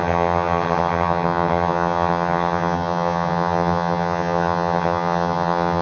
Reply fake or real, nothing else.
fake